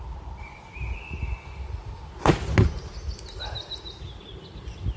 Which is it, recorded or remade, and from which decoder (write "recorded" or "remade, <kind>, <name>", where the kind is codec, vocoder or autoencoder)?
recorded